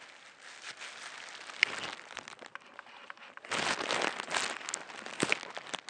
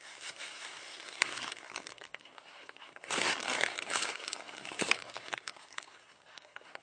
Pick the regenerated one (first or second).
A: second